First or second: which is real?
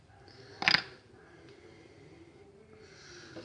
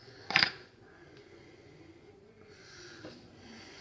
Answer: first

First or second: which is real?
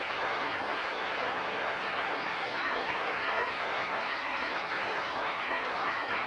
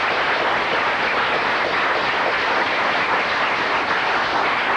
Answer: second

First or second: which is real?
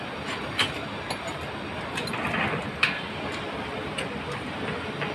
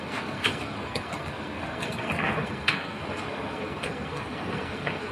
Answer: first